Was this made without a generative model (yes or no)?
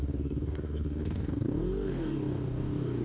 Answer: no